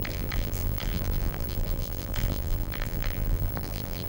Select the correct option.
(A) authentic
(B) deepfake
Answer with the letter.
B